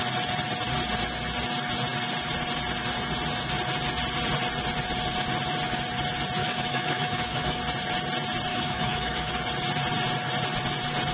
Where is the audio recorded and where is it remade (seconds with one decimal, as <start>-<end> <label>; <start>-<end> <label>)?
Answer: 0.0-6.4 recorded; 6.4-7.6 remade; 7.6-8.5 recorded; 8.5-9.3 remade; 9.3-11.1 recorded